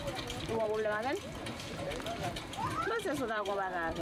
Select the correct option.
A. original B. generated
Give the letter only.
B